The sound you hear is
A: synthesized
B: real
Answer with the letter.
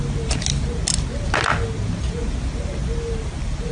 B